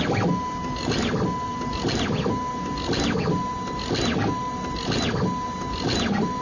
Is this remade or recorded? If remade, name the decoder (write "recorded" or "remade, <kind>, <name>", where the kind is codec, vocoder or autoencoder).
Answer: recorded